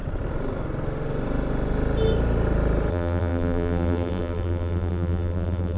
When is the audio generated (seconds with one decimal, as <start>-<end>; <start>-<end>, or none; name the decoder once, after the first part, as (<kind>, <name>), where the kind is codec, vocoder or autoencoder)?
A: 2.9-5.8 (vocoder, BigVGAN v2)